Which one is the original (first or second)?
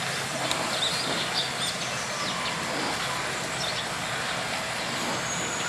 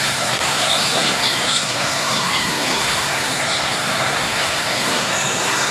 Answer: first